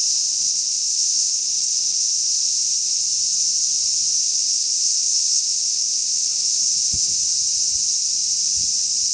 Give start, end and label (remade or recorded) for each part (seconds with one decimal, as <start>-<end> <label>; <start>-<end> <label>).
0.0-3.0 remade; 3.0-4.2 recorded; 4.2-7.2 remade; 7.2-9.1 recorded

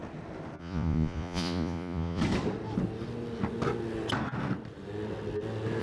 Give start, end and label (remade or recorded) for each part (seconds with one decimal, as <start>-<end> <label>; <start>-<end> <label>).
0.0-0.6 recorded; 0.6-2.2 remade; 2.2-5.8 recorded

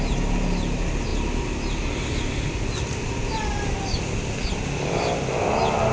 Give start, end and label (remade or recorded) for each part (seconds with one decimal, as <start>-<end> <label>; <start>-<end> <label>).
0.0-5.9 recorded

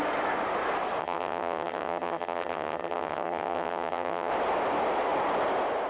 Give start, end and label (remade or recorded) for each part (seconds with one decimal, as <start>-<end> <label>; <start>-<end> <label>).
0.0-1.0 recorded; 1.0-4.3 remade; 4.3-5.9 recorded